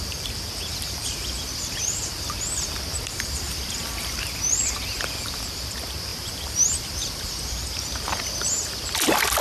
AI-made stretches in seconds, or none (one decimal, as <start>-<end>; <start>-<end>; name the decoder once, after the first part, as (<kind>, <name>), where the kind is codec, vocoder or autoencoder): 0.7-5.4 (vocoder, BigVGAN v2); 6.1-7.7

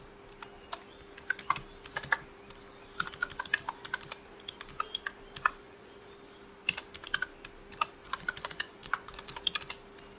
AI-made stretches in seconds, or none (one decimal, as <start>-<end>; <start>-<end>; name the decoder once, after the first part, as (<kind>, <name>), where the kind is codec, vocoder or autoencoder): 5.6-6.1 (vocoder, Vocos); 8.0-9.3

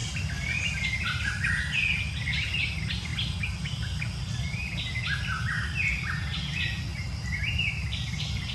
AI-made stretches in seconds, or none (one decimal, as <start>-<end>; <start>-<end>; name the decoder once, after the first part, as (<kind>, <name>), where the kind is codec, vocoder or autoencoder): 3.1-5.0 (vocoder, BigVGAN v2); 6.9-8.5

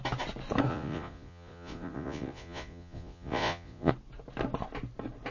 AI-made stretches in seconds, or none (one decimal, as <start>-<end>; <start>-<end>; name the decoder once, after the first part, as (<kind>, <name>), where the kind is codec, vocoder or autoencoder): 0.7-3.9 (vocoder, Vocos)

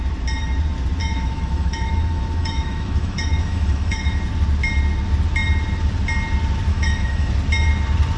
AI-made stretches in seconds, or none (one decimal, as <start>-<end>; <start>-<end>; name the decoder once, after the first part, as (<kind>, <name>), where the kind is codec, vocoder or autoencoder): 1.0-4.2 (autoencoder, DAC-VAE); 6.7-7.3

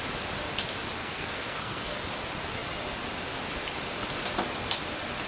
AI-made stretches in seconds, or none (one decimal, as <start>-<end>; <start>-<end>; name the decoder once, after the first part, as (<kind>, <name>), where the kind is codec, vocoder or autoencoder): 1.0-2.0 (codec, SNAC)

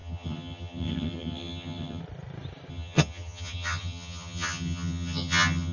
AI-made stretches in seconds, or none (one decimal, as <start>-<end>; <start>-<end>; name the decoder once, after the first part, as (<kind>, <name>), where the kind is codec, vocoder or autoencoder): 0.0-2.0 (vocoder, HiFi-GAN); 2.7-5.7